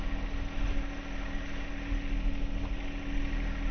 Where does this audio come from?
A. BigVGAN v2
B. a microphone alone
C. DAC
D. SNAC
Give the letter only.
B